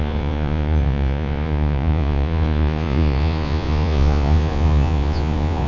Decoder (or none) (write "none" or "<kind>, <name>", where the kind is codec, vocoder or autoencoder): vocoder, Vocos